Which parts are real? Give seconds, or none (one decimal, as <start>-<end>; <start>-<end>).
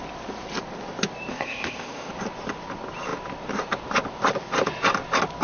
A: 0.0-1.3; 2.1-5.4